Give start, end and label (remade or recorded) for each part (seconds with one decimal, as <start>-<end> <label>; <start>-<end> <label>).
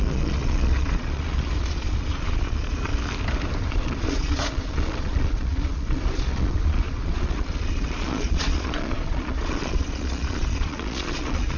0.0-2.9 remade; 2.9-3.7 recorded; 3.7-11.6 remade